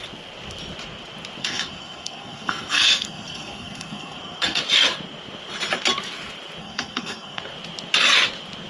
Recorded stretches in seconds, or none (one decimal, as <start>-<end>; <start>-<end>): 0.0-1.4; 4.6-6.6; 7.4-8.7